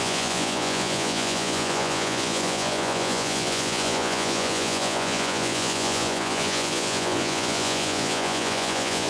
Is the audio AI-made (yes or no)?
yes